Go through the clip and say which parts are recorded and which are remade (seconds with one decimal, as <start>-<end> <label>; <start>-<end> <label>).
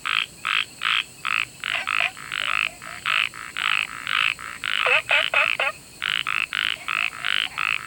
0.0-4.1 recorded; 4.1-6.8 remade; 6.8-7.9 recorded